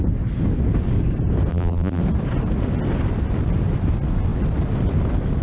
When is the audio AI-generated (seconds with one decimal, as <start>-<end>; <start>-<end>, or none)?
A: 1.5-2.0